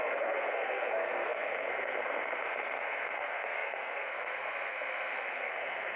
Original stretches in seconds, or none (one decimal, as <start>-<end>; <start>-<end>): none